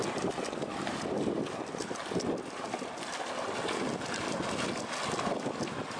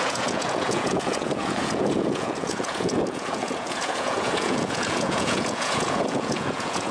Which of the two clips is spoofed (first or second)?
second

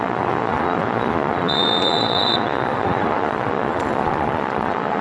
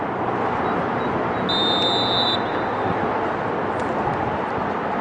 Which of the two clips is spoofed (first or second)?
first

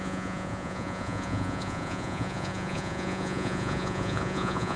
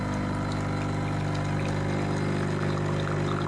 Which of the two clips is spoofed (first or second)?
first